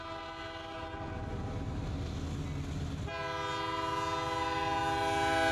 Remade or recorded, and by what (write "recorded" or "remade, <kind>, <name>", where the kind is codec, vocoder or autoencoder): recorded